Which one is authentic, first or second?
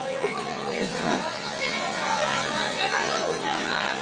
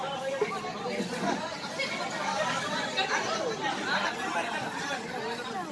second